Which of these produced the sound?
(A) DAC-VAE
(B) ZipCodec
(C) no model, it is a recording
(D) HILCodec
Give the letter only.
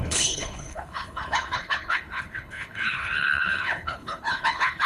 D